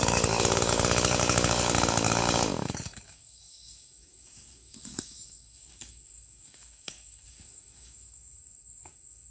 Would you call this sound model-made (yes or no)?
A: yes